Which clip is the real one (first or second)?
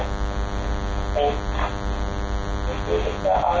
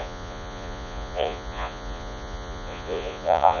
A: first